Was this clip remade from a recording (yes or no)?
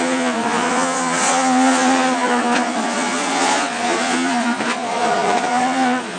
yes